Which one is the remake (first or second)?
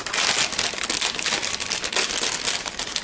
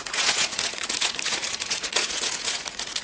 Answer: second